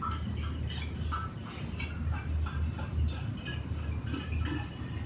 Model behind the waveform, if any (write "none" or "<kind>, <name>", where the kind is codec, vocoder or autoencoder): none